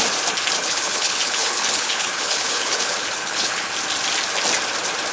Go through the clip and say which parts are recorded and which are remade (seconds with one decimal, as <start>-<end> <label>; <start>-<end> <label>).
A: 0.0-0.6 recorded; 0.6-3.7 remade; 3.7-5.1 recorded